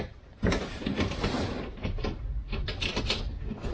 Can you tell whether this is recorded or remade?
recorded